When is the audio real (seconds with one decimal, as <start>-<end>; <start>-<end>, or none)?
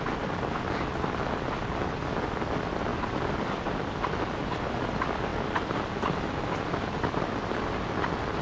0.0-8.4